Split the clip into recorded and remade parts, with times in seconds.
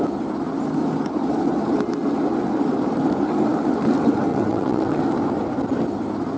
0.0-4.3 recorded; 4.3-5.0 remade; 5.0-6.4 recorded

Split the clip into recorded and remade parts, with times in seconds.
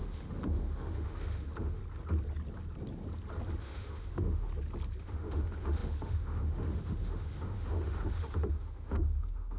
0.0-1.8 remade; 1.8-3.6 recorded; 3.6-4.5 remade; 4.5-5.0 recorded; 5.0-9.6 remade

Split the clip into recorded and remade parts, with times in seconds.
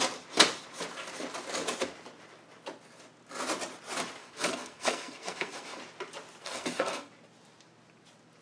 0.0-4.2 recorded; 4.2-5.8 remade; 5.8-6.4 recorded; 6.4-7.1 remade; 7.1-8.4 recorded